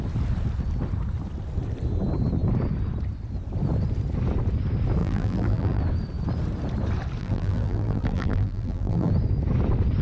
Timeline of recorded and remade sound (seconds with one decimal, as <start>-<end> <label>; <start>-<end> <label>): 0.0-5.0 recorded; 5.0-5.8 remade; 5.8-7.2 recorded; 7.2-9.1 remade; 9.1-10.0 recorded